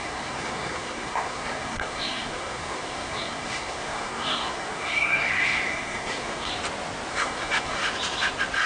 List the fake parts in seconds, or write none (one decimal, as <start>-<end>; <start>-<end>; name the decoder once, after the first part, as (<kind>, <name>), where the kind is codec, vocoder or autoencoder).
0.0-6.5 (codec, SNAC); 7.1-7.8